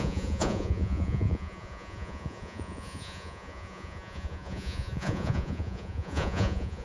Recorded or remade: remade